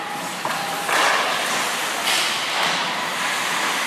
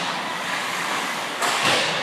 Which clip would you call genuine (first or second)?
first